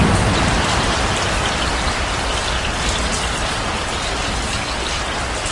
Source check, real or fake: real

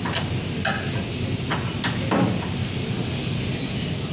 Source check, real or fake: real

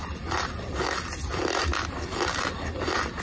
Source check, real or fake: real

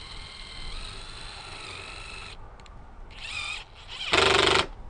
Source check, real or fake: real